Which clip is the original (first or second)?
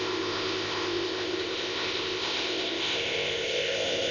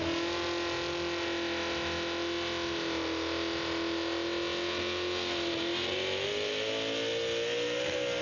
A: second